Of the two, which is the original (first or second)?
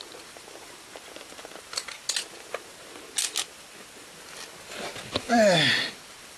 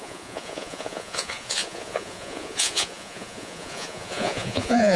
first